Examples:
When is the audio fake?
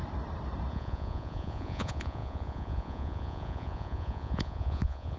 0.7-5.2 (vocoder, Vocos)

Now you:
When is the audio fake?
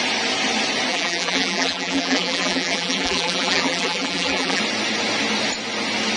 0.9-4.6 (vocoder, BigVGAN v2)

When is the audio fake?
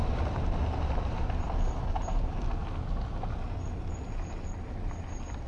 none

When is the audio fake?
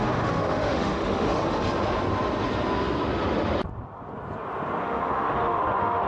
0.0-1.4 (autoencoder, DAC-VAE); 4.8-6.1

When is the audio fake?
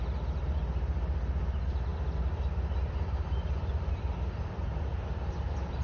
none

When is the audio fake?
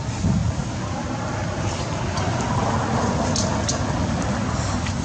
none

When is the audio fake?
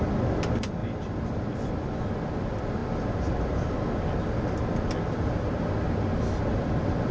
0.8-1.7 (vocoder, BigVGAN v2)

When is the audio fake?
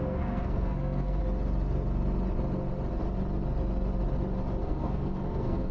0.0-1.2 (codec, SNAC); 4.6-5.7